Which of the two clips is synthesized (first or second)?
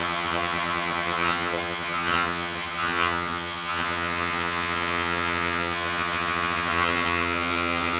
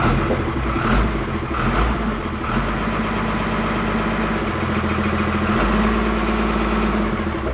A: first